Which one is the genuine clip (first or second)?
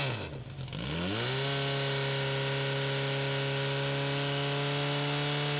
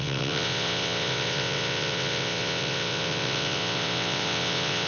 first